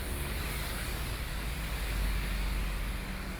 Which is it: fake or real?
fake